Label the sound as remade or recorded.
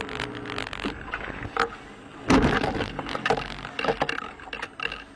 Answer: recorded